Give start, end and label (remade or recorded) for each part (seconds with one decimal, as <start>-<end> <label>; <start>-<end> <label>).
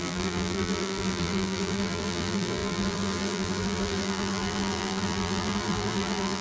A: 0.0-6.4 remade